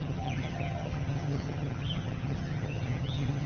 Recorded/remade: remade